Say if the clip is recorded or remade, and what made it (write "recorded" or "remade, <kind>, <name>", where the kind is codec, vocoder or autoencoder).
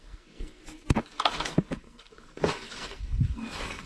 remade, codec, SNAC